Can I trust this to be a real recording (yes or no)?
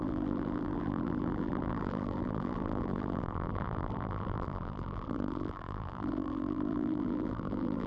no